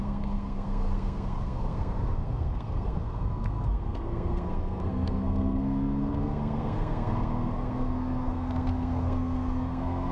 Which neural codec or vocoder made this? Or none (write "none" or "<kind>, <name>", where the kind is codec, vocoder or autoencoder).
codec, SNAC